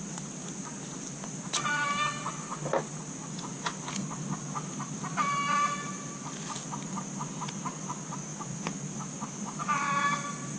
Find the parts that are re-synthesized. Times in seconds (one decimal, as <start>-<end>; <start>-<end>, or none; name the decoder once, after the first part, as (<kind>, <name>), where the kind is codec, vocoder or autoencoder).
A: none